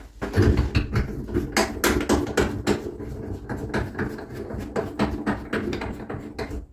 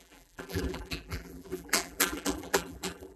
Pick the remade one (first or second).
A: second